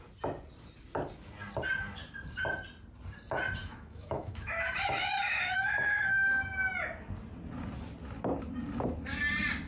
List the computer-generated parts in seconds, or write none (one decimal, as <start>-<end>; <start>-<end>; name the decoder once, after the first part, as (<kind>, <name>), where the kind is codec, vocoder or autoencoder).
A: 3.6-6.3 (autoencoder, DAC-VAE)